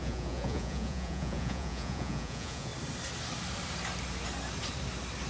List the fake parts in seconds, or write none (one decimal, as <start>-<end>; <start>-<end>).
0.0-2.7